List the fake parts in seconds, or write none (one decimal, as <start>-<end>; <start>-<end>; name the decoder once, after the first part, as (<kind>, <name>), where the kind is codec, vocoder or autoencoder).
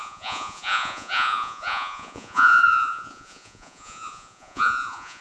0.0-5.2 (vocoder, Vocos)